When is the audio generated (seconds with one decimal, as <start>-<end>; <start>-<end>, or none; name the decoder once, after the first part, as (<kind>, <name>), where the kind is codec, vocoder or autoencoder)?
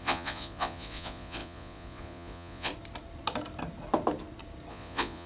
0.0-2.7 (vocoder, Vocos); 4.7-5.3